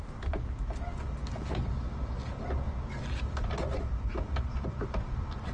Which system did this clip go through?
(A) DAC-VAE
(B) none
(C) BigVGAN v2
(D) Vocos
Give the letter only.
B